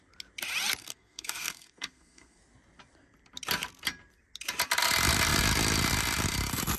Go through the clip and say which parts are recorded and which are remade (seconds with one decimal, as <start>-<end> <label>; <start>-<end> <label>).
0.0-0.8 recorded; 0.8-2.4 remade; 2.4-6.8 recorded

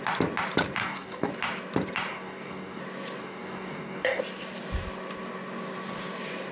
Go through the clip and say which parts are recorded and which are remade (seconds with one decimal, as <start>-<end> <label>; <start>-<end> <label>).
0.0-0.8 recorded; 0.8-1.3 remade; 1.3-2.1 recorded; 2.1-2.8 remade; 2.8-3.2 recorded; 3.2-4.2 remade; 4.2-6.5 recorded

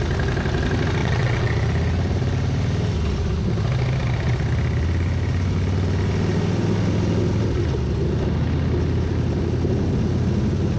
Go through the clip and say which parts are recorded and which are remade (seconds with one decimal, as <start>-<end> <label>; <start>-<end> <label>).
0.0-1.0 recorded; 1.0-1.5 remade; 1.5-10.8 recorded

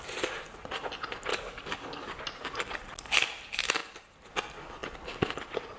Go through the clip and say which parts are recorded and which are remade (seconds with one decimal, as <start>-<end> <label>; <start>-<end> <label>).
0.0-1.3 recorded; 1.3-2.2 remade; 2.2-5.8 recorded

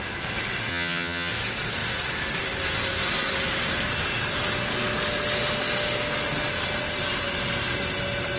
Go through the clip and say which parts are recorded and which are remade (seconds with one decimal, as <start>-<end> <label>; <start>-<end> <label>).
0.0-0.7 recorded; 0.7-1.3 remade; 1.3-8.4 recorded

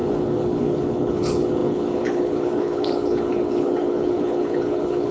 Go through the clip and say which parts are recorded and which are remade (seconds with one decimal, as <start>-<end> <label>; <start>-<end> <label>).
0.0-5.1 remade

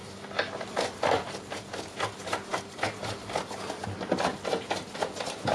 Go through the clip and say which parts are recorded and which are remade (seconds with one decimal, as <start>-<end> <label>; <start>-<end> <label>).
0.0-5.5 recorded

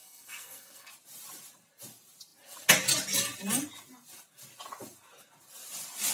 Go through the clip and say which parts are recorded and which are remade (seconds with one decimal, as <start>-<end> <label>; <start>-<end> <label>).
0.0-0.9 remade; 0.9-6.1 recorded